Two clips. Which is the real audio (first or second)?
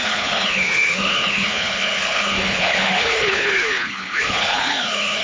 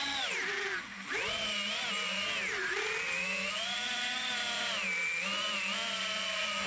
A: second